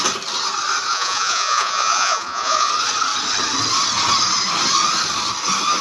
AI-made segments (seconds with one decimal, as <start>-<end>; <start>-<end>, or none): 0.9-2.7